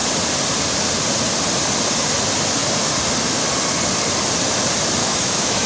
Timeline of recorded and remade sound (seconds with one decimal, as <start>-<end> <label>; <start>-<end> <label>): 0.0-5.0 recorded; 5.0-5.7 remade

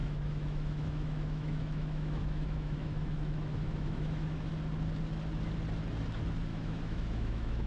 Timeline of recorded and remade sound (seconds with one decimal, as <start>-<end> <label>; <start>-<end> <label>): 0.0-4.5 remade; 4.5-6.5 recorded; 6.5-7.7 remade

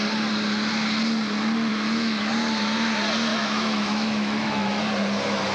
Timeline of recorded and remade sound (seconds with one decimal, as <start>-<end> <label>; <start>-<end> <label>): 0.0-1.7 recorded; 1.7-2.3 remade; 2.3-3.3 recorded; 3.3-4.8 remade; 4.8-5.5 recorded

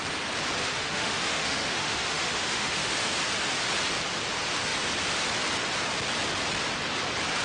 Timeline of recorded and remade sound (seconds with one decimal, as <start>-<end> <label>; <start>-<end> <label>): 0.0-0.6 recorded; 0.6-3.1 remade; 3.1-7.4 recorded

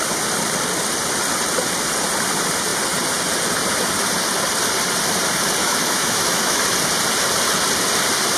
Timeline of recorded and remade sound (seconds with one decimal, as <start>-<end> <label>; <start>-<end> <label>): 0.0-5.6 recorded; 5.6-6.6 remade; 6.6-8.4 recorded

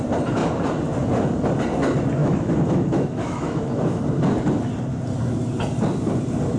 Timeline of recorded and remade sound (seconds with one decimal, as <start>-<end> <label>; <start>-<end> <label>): 0.0-2.2 recorded; 2.2-4.0 remade; 4.0-6.6 recorded